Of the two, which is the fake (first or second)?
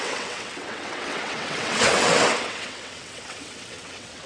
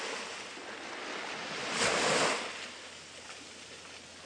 first